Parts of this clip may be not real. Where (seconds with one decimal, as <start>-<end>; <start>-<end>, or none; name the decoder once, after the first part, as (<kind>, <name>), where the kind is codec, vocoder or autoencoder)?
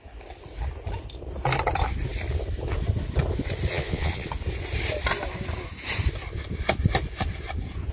3.7-4.3 (vocoder, Vocos)